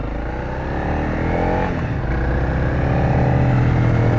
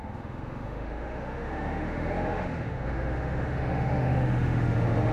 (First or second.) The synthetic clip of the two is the second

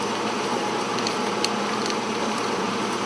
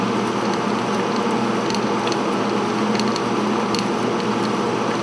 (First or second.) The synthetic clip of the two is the first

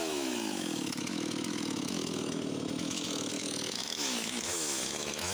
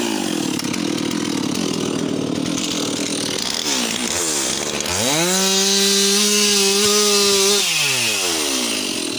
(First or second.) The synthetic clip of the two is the first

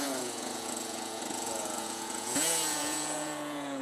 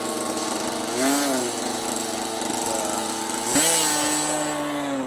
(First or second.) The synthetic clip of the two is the first